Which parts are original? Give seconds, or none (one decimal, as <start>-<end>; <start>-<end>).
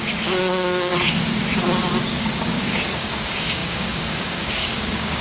0.9-2.1